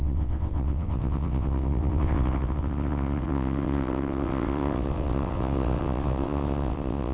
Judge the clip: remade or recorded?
remade